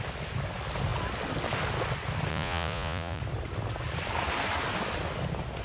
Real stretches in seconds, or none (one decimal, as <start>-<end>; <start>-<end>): 0.0-2.3; 3.2-5.6

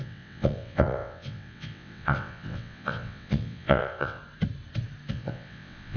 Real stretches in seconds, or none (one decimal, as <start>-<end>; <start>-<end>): 4.2-5.1

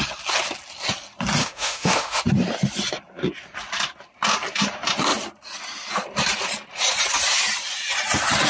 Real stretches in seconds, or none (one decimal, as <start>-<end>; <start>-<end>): 0.0-1.4; 2.2-8.5

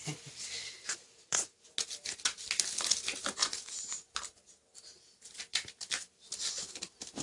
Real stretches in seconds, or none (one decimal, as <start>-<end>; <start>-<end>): 0.0-1.2; 1.7-3.4; 4.1-7.2

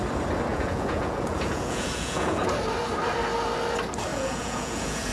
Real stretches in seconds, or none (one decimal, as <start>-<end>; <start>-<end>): 0.0-0.5; 2.4-4.1

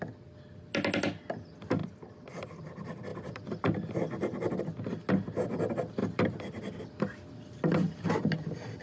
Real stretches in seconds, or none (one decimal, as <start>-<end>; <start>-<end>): 0.0-1.8; 2.6-3.1; 4.6-6.0; 6.8-8.8

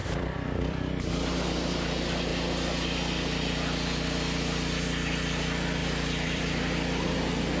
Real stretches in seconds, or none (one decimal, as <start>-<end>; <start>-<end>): 0.9-5.8; 6.4-7.6